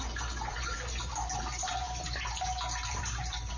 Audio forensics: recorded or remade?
remade